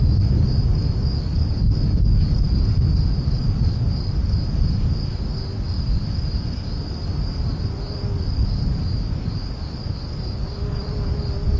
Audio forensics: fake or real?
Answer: real